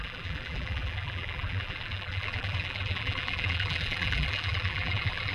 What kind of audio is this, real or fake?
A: fake